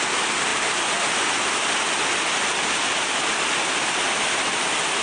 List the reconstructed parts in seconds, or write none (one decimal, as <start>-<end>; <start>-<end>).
none